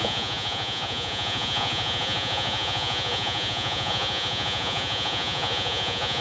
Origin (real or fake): fake